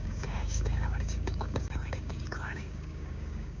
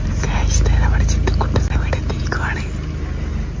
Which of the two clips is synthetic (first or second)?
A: first